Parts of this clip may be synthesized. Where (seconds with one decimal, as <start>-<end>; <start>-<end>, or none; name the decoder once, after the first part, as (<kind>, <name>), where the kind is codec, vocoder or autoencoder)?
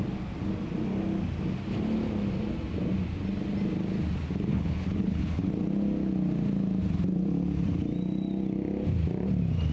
4.5-5.5 (codec, HILCodec)